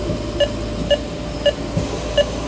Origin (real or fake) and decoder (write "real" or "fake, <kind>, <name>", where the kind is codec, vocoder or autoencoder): real